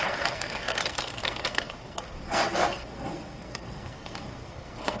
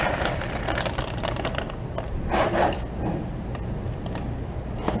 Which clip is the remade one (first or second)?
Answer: first